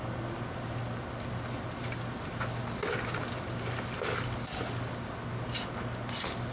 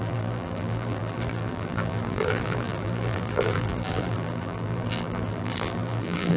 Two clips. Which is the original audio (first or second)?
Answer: first